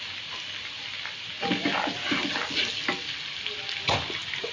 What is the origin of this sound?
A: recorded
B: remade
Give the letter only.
A